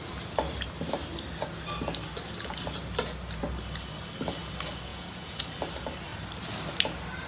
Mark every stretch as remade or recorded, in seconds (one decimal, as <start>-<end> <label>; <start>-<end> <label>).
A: 0.0-4.9 recorded; 4.9-5.4 remade; 5.4-7.3 recorded